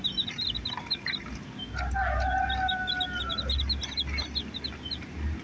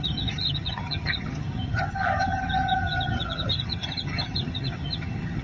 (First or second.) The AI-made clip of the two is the second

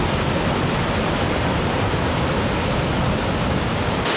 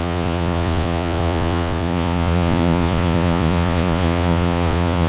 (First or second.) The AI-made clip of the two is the second